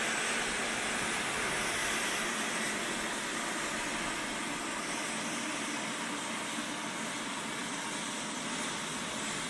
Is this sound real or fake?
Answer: real